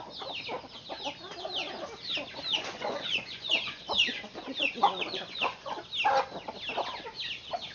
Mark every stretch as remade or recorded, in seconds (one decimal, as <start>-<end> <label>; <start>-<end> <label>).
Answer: 0.0-2.5 recorded; 2.5-5.8 remade; 5.8-7.7 recorded